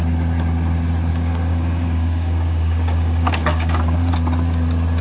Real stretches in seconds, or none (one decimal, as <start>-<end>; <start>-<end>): 0.0-1.1; 4.1-5.0